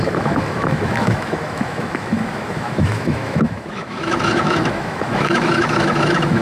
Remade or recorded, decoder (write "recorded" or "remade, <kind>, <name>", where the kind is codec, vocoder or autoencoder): remade, autoencoder, DAC-VAE